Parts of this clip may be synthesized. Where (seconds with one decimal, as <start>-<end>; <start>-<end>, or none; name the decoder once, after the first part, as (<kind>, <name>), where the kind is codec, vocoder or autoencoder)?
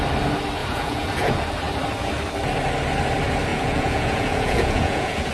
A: 0.6-1.3 (vocoder, Vocos); 3.5-5.3